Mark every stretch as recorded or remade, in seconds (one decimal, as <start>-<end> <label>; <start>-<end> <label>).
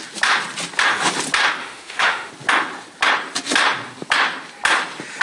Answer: 0.0-1.6 recorded; 1.6-2.3 remade; 2.3-5.2 recorded